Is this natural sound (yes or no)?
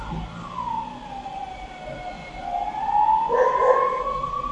yes